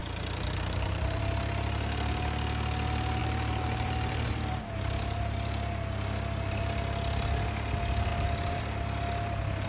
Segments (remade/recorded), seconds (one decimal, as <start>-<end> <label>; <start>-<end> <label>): 0.0-1.2 remade; 1.2-3.2 recorded; 3.2-4.6 remade; 4.6-8.1 recorded; 8.1-8.6 remade; 8.6-9.7 recorded